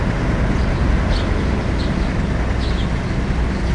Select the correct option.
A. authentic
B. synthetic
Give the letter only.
A